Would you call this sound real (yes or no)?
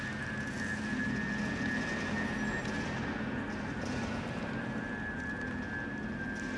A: yes